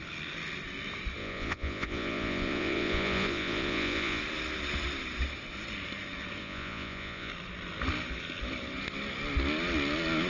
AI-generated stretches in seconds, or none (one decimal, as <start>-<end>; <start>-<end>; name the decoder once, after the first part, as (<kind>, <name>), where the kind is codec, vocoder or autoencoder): 1.2-4.2 (vocoder, Vocos); 6.4-7.3